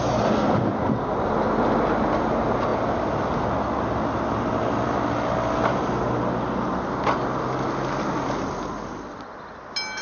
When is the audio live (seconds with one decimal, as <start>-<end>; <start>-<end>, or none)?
0.0-10.0

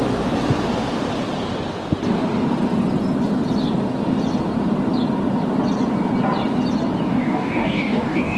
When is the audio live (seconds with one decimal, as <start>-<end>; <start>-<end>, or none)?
0.0-7.1

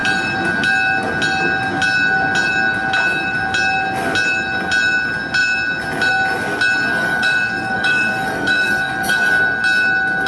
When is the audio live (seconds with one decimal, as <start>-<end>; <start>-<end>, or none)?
0.0-6.9; 9.3-10.3